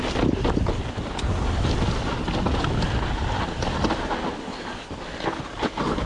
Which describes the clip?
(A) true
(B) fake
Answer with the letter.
A